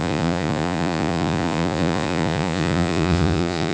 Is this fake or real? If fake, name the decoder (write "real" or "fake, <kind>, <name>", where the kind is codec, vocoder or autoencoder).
fake, vocoder, Vocos